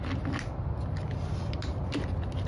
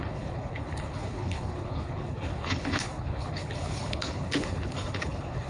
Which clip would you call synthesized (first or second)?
second